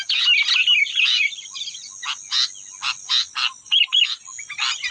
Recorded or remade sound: recorded